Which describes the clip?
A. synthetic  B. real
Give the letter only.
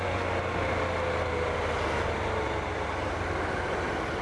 B